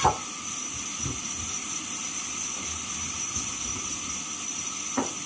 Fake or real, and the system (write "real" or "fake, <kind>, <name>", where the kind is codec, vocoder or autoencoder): real